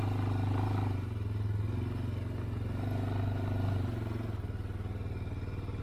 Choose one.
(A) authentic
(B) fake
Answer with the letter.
A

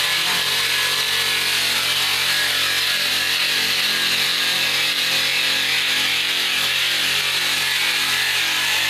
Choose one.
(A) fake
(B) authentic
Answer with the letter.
B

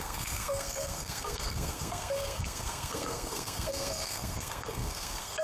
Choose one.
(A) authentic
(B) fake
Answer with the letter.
B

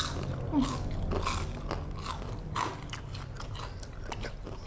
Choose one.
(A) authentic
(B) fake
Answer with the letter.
A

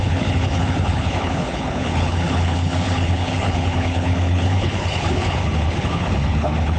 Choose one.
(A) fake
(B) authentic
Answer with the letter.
A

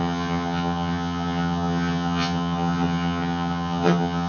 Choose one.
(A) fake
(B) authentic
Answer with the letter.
A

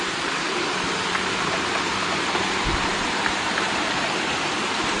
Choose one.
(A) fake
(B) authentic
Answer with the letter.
A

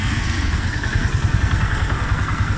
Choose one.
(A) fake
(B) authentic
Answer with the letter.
A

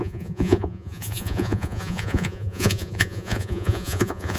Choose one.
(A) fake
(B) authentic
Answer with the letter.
A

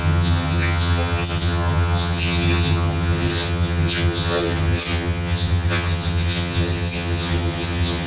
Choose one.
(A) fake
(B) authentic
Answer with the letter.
A